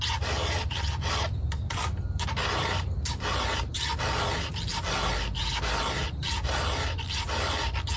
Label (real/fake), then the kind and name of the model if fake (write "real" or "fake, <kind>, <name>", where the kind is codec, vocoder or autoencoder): real